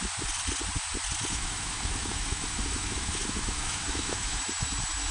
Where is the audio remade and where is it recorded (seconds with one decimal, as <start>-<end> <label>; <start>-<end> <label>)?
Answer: 0.0-1.3 recorded; 1.3-4.4 remade; 4.4-5.1 recorded